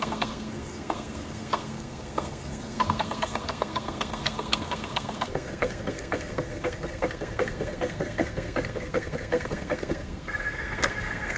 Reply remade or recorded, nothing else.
remade